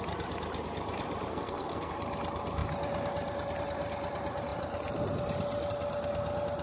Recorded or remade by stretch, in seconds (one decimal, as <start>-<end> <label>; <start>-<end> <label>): 0.0-1.3 recorded; 1.3-1.9 remade; 1.9-6.6 recorded